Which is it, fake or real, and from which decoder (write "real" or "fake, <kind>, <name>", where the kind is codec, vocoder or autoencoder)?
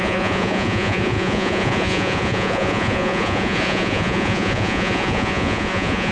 fake, vocoder, Vocos